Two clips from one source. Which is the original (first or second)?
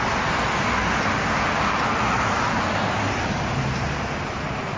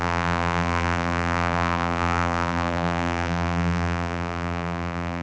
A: first